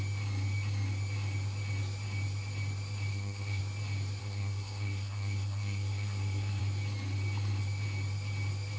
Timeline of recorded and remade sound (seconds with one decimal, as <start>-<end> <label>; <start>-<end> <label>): 0.0-3.1 recorded; 3.1-3.6 remade; 3.6-4.2 recorded; 4.2-6.6 remade; 6.6-8.8 recorded